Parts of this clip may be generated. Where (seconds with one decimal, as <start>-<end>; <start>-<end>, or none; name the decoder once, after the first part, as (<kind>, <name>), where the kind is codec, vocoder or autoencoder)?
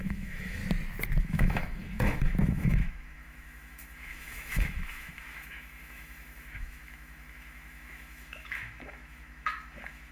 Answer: 0.0-0.6 (autoencoder, DAC-VAE); 1.2-10.1